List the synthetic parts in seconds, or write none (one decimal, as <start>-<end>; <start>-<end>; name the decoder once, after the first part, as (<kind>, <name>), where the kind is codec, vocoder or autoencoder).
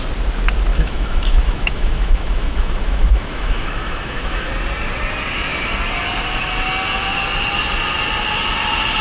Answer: 0.7-4.5 (autoencoder, DAC-VAE)